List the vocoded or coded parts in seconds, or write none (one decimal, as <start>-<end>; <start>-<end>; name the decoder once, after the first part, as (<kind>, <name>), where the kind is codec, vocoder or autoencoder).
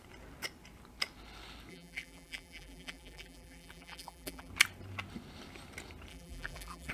1.7-4.5 (vocoder, BigVGAN v2); 6.1-6.9